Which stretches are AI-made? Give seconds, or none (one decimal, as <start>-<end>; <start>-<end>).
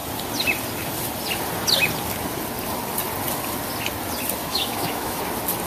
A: 4.4-5.2